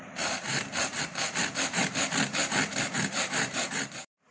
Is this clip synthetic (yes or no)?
yes